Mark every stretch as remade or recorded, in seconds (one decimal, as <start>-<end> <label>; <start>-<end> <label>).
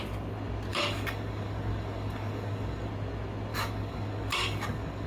0.0-0.7 recorded; 0.7-2.9 remade; 2.9-3.5 recorded; 3.5-5.1 remade